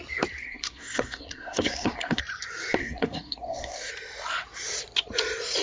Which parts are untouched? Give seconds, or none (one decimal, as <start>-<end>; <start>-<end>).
0.0-0.4; 2.2-2.8; 3.9-5.6